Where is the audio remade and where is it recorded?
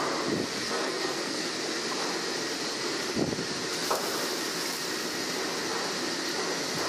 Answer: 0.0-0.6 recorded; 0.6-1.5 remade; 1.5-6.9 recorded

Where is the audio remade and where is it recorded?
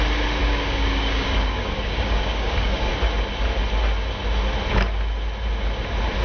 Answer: 0.0-0.4 recorded; 0.4-2.9 remade; 2.9-6.2 recorded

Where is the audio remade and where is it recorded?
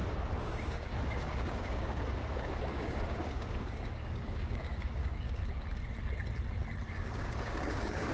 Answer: 0.0-5.4 remade; 5.4-6.9 recorded; 6.9-8.1 remade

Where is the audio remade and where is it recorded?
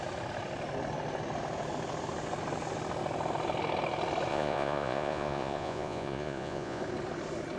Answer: 0.0-4.3 recorded; 4.3-6.8 remade; 6.8-7.6 recorded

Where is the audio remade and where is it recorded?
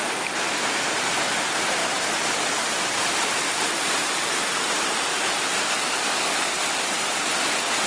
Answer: 0.0-7.9 recorded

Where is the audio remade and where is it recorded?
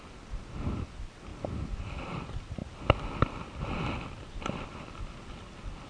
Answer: 0.0-1.3 recorded; 1.3-1.8 remade; 1.8-5.9 recorded